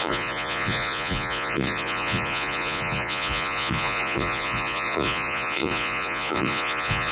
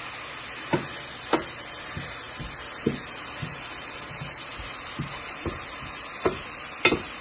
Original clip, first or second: second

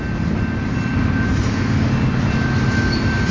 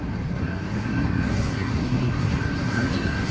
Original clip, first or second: first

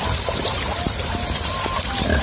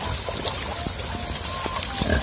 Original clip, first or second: second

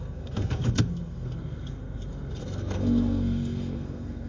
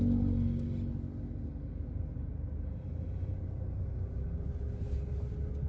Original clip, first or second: second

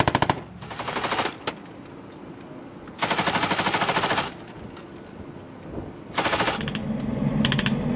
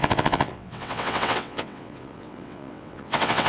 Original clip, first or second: first